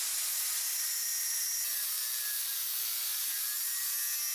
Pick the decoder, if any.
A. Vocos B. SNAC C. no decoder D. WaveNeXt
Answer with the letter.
C